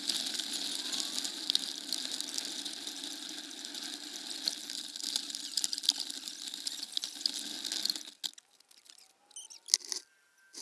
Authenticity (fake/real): real